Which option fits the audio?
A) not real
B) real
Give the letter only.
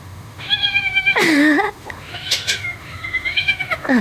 A